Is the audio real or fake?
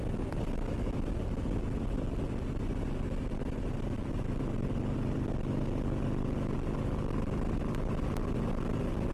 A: real